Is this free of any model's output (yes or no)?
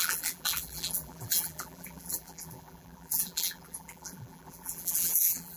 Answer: no